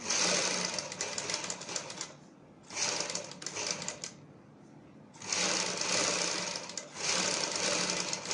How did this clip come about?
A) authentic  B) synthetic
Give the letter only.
A